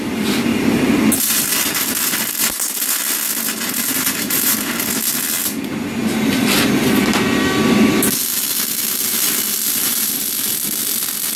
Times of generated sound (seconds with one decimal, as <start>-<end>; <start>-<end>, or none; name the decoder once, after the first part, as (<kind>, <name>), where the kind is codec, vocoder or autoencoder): 3.9-4.7 (vocoder, BigVGAN v2)